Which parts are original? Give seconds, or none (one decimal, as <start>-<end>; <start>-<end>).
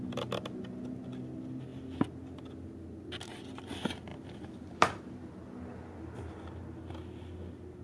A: 0.0-4.1; 5.0-7.8